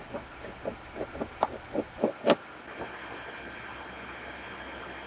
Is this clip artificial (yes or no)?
no